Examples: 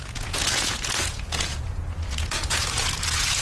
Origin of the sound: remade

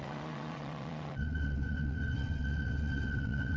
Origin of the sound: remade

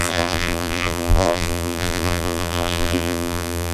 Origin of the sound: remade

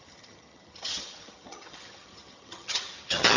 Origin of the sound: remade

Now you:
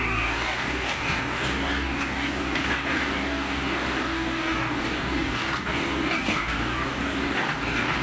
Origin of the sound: remade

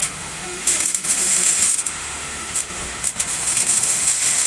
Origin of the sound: remade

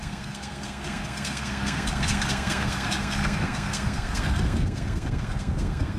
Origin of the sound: remade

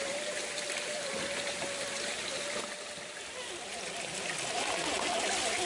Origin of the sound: recorded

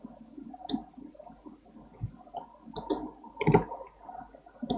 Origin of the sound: recorded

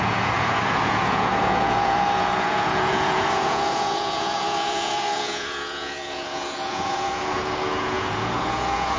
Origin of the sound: remade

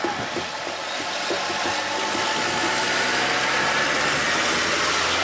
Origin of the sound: recorded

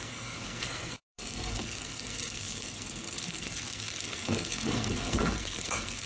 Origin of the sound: remade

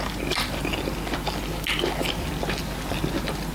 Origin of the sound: recorded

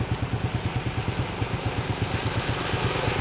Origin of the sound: recorded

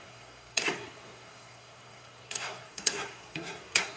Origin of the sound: remade